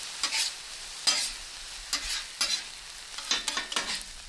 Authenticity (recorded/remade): recorded